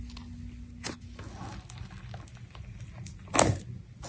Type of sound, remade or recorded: recorded